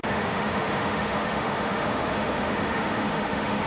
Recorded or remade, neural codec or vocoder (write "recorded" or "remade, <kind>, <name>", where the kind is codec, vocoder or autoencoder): remade, autoencoder, DAC-VAE